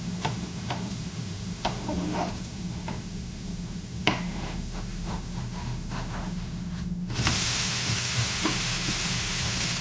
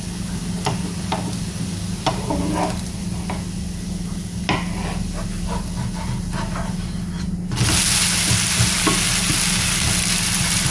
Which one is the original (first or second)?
second